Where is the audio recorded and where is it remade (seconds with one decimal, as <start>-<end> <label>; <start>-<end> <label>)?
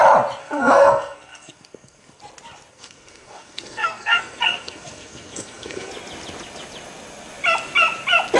0.0-0.4 recorded; 0.4-2.2 remade; 2.2-2.7 recorded; 2.7-5.9 remade; 5.9-8.4 recorded